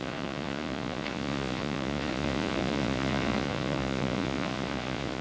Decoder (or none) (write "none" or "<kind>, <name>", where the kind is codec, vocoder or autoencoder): vocoder, Vocos